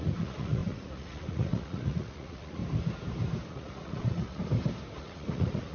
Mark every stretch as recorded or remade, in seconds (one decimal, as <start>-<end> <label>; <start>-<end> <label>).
0.0-2.6 remade; 2.6-3.5 recorded; 3.5-4.4 remade; 4.4-5.0 recorded; 5.0-5.7 remade